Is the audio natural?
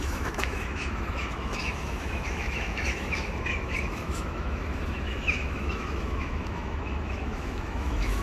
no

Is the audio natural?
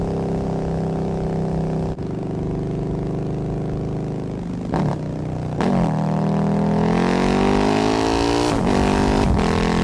yes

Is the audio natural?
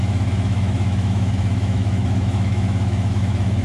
no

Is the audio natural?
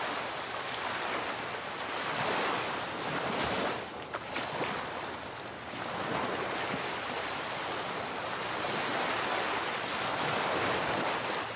yes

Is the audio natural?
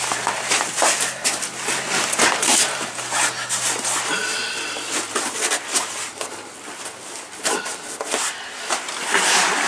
yes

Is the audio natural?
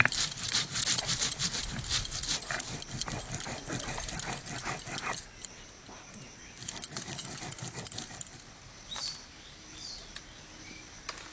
yes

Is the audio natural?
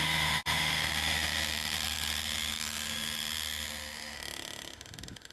no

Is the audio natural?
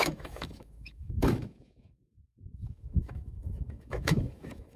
no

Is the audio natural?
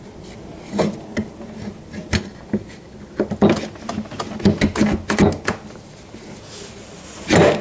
yes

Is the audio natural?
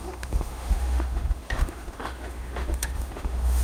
no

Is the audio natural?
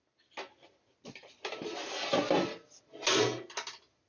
yes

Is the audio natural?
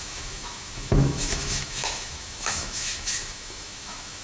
no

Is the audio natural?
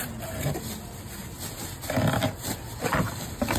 yes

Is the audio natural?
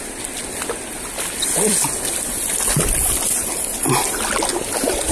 yes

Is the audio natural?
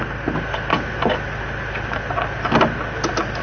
yes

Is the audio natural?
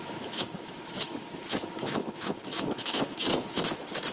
no